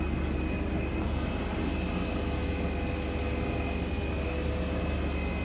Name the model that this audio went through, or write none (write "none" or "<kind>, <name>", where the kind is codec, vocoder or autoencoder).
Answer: none